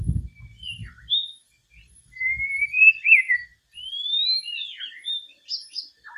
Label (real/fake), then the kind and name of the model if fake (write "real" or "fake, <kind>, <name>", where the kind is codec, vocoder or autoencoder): real